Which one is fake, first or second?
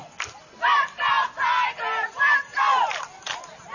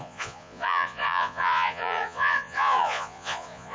second